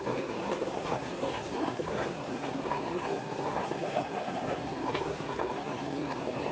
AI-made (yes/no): yes